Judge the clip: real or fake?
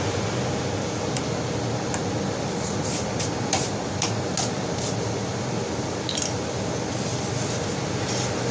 real